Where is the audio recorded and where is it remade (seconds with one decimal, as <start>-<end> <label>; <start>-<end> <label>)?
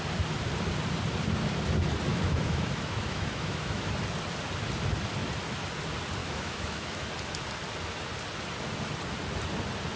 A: 0.0-2.1 recorded; 2.1-3.9 remade; 3.9-6.2 recorded; 6.2-7.1 remade; 7.1-10.0 recorded